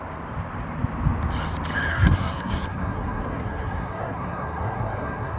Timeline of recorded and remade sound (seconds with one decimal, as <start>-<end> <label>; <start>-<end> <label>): 0.0-1.9 recorded; 1.9-5.4 remade